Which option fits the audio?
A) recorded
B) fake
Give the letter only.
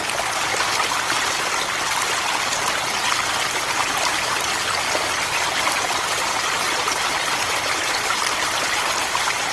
A